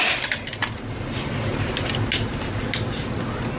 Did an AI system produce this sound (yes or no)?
no